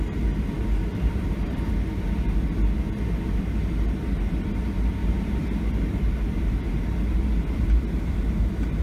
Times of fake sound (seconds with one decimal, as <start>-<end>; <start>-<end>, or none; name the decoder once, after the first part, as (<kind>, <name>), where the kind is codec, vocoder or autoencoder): 0.9-1.7 (vocoder, BigVGAN v2); 5.0-5.6